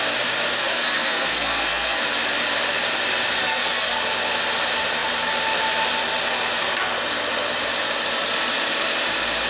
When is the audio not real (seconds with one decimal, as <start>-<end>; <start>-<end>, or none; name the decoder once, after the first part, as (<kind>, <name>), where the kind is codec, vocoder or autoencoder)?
0.6-2.0 (codec, SNAC); 3.4-4.0